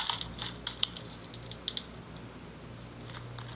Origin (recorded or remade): recorded